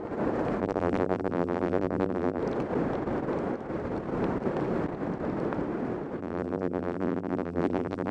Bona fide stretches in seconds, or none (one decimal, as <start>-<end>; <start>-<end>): 0.0-0.6; 2.4-6.2